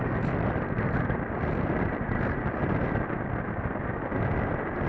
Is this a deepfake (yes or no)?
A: no